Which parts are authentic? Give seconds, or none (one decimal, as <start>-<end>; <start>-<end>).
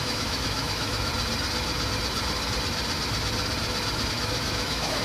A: 1.1-4.1